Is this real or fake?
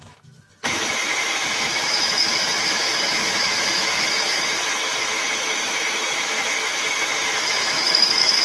fake